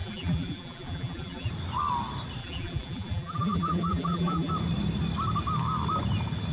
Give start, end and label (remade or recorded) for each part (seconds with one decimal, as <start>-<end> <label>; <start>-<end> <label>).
0.0-1.5 remade; 1.5-2.4 recorded; 2.4-4.5 remade; 4.5-6.5 recorded